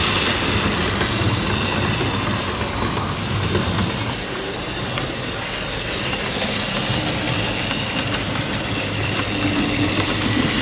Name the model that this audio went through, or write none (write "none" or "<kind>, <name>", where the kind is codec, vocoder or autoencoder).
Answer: none